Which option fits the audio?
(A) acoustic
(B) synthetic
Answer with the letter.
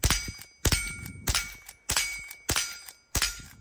B